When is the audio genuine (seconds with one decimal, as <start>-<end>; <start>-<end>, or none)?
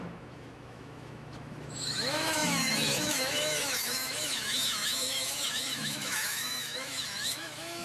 none